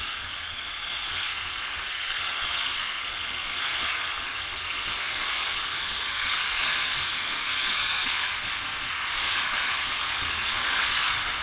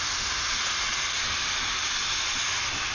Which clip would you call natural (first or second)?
second